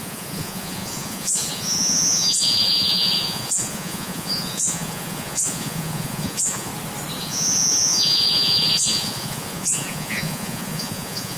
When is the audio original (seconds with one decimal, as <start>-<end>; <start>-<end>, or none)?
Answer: 6.7-7.2